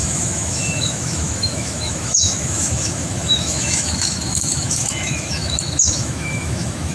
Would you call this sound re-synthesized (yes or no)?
yes